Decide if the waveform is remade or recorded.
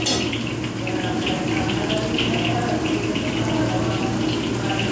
recorded